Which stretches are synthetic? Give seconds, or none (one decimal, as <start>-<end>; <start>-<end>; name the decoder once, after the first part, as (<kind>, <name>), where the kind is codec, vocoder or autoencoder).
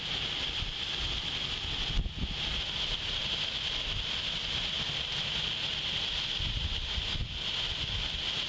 none